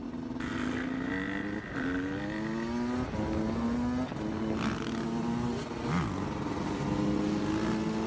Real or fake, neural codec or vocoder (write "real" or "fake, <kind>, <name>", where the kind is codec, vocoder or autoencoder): real